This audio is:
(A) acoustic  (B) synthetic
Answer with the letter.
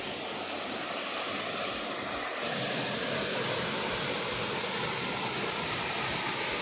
A